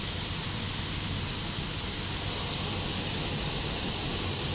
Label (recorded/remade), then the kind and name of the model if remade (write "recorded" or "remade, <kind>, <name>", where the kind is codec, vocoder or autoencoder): recorded